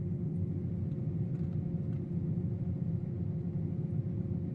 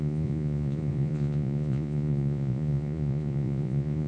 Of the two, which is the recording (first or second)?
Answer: first